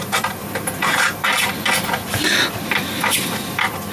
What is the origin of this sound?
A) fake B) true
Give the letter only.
A